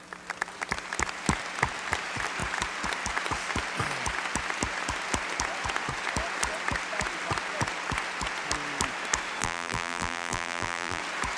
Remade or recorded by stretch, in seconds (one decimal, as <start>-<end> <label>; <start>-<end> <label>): 0.0-9.4 recorded; 9.4-11.0 remade; 11.0-11.4 recorded